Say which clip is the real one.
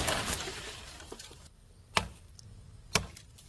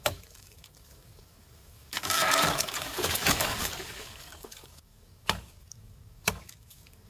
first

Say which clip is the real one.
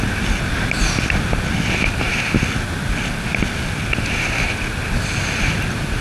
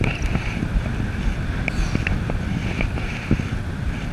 first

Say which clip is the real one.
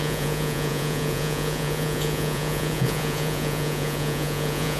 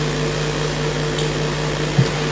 second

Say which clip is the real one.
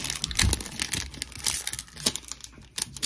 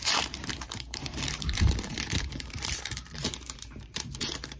first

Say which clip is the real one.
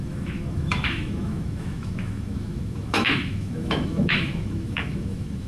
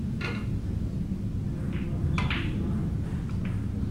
second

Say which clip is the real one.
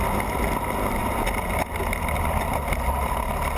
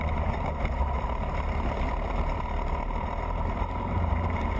first